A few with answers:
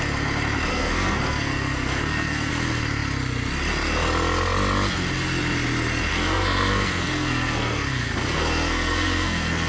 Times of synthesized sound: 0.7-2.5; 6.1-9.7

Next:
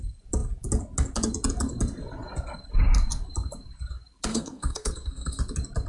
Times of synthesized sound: 4.3-5.4

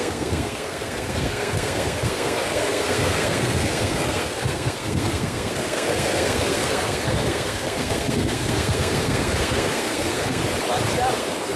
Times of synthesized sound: 0.0-10.4; 11.1-11.6

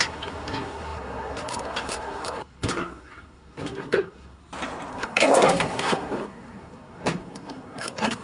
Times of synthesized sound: 0.0-4.4; 4.9-8.2

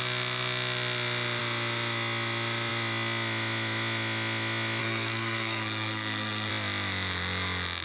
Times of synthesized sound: 4.8-6.5